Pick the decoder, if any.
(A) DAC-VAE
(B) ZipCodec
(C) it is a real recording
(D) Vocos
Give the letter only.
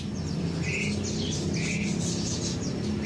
C